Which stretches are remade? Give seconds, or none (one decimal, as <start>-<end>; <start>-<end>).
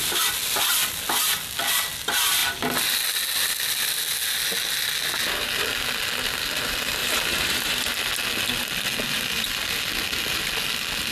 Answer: 7.0-7.9